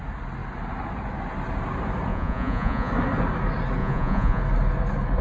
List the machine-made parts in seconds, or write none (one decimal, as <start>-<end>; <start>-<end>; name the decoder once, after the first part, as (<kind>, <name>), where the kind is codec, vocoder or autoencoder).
2.1-2.9 (vocoder, Vocos); 3.8-4.4